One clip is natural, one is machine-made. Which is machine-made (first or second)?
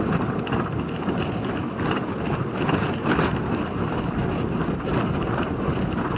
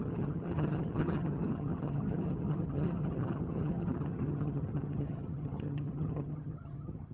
second